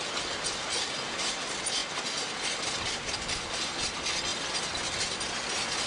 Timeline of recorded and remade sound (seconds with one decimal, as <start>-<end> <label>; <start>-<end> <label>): 0.0-5.9 recorded